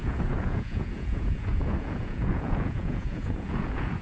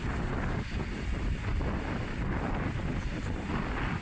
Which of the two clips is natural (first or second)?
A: second